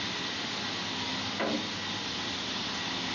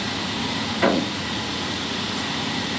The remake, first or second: second